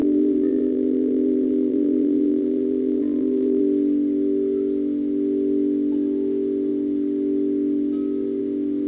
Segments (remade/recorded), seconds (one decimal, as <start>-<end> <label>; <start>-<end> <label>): 0.0-3.6 remade; 3.6-8.9 recorded